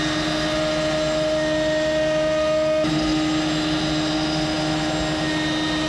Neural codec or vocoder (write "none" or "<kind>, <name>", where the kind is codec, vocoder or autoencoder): none